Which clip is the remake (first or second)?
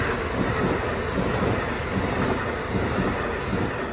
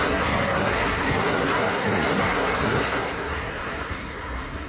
second